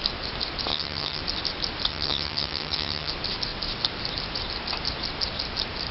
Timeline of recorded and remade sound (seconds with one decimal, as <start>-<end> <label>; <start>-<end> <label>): 0.0-0.7 recorded; 0.7-1.2 remade; 1.2-1.9 recorded; 1.9-3.1 remade; 3.1-5.9 recorded